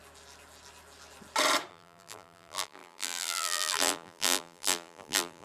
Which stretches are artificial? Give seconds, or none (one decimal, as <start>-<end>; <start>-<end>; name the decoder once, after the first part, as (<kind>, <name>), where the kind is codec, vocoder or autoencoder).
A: 1.7-5.4 (vocoder, BigVGAN v2)